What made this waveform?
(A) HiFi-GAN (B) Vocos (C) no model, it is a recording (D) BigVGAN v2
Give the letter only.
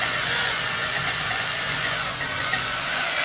B